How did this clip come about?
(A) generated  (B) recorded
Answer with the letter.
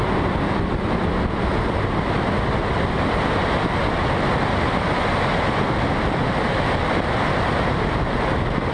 B